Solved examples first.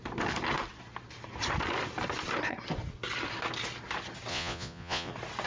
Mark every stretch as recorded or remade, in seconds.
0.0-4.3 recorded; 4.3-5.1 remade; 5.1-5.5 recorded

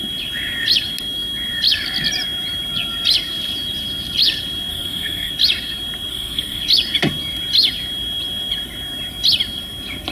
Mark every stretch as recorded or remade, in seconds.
0.0-4.7 recorded; 4.7-5.3 remade; 5.3-6.1 recorded; 6.1-6.6 remade; 6.6-10.1 recorded

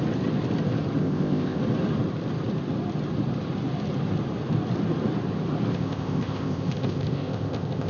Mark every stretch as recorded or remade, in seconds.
0.0-1.0 recorded; 1.0-1.6 remade; 1.6-5.7 recorded; 5.7-7.9 remade

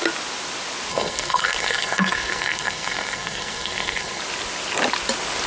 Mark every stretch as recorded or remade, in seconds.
0.0-0.9 recorded; 0.9-4.2 remade; 4.2-5.5 recorded

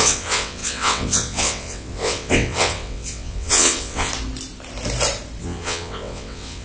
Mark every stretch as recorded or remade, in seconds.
0.0-4.1 remade; 4.1-5.4 recorded; 5.4-6.6 remade

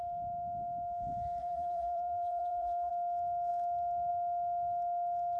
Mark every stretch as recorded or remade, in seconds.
0.0-1.4 recorded; 1.4-2.9 remade; 2.9-5.4 recorded